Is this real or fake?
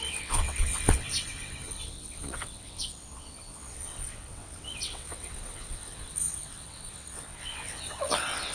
fake